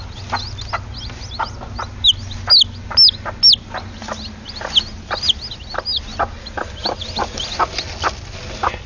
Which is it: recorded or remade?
recorded